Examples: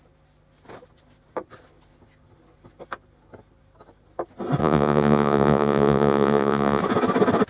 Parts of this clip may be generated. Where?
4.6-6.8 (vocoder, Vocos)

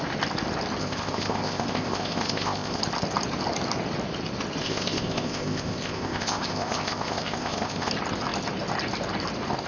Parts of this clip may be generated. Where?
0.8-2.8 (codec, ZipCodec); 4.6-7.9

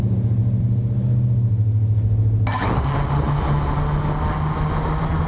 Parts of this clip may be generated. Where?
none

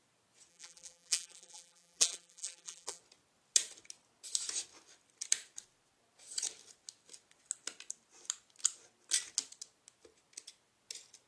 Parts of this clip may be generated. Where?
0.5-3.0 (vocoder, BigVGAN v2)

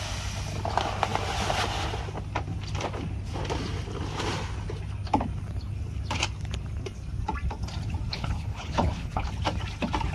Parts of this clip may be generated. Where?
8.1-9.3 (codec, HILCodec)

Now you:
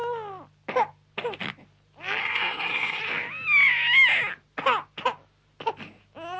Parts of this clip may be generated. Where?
2.2-3.0 (codec, SNAC)